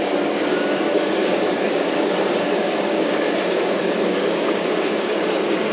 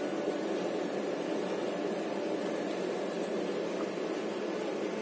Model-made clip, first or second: first